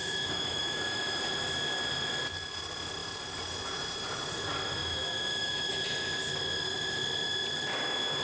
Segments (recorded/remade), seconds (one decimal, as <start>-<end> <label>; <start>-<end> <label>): 0.0-1.2 remade; 1.2-4.8 recorded; 4.8-5.7 remade; 5.7-8.2 recorded